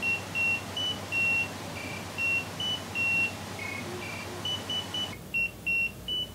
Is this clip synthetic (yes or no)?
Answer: no